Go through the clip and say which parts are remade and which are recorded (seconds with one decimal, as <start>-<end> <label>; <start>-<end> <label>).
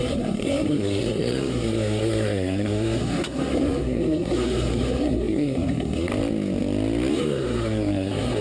0.0-6.1 remade; 6.1-7.1 recorded; 7.1-8.4 remade